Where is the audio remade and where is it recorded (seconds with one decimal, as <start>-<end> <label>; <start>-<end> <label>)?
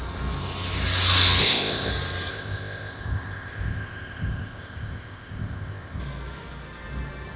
0.0-1.4 recorded; 1.4-1.9 remade; 1.9-2.3 recorded; 2.3-6.0 remade; 6.0-7.4 recorded